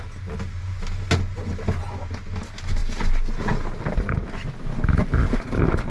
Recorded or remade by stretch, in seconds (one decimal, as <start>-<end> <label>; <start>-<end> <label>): 0.0-5.9 recorded